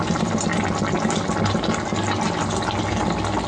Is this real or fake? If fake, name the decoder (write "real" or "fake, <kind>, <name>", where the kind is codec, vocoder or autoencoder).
real